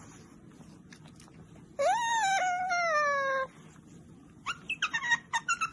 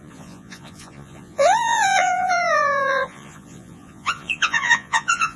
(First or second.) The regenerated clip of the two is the second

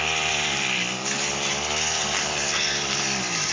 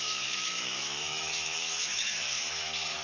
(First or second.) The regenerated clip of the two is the second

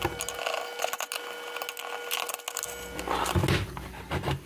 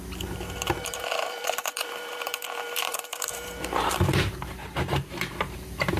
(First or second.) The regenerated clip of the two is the second